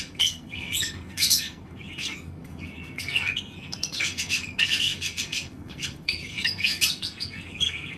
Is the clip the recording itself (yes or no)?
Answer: no